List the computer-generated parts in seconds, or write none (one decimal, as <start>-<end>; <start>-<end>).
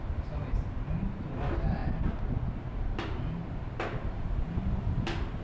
none